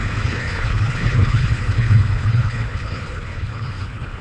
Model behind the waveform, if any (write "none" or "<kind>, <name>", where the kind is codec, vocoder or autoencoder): codec, HILCodec